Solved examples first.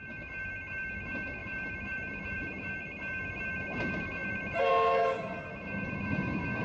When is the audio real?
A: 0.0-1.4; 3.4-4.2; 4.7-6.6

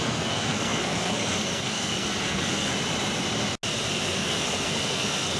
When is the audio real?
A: 2.7-3.9

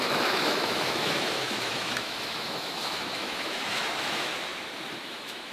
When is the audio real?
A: 4.3-5.0